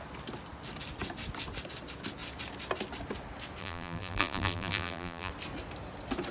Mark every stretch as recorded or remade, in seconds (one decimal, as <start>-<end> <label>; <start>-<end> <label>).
0.0-3.6 recorded; 3.6-5.3 remade; 5.3-6.3 recorded